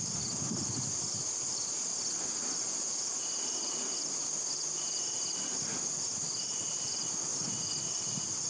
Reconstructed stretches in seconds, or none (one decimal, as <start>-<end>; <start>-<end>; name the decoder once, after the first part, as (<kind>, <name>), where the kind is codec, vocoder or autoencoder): none